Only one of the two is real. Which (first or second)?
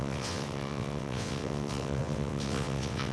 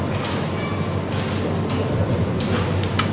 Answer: second